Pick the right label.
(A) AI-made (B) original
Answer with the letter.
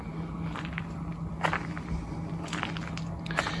B